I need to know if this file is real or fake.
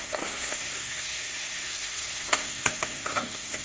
fake